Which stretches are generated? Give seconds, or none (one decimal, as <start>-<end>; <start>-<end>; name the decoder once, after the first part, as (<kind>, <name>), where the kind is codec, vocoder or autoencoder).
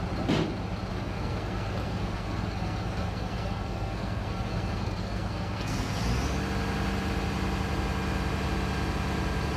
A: 0.9-6.0 (codec, SNAC)